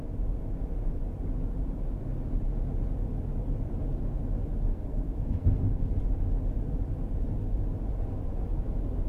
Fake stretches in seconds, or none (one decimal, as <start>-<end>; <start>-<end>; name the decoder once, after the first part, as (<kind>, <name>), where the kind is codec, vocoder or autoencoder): 4.7-5.9 (codec, SNAC)